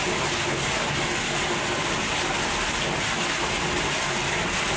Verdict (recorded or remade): recorded